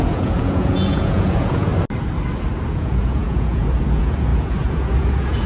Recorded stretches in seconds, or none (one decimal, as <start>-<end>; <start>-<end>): 1.7-2.7